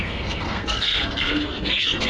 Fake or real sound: fake